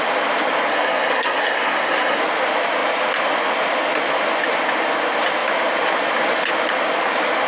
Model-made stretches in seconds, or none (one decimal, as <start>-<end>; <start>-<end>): 0.7-2.2